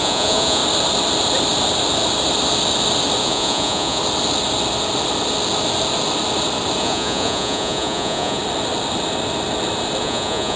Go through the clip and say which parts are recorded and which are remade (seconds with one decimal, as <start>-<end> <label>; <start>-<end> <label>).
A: 0.0-0.6 remade; 0.6-3.2 recorded; 3.2-4.0 remade; 4.0-6.8 recorded; 6.8-8.4 remade; 8.4-10.0 recorded; 10.0-10.6 remade